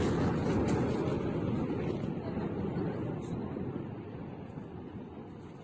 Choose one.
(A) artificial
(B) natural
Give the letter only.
B